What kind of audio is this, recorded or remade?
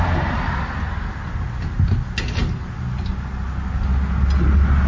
recorded